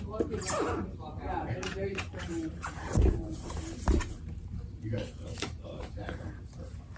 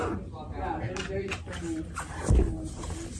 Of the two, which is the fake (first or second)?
first